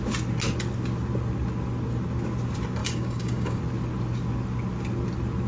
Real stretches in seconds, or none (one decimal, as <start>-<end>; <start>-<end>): 0.0-2.8; 3.6-5.5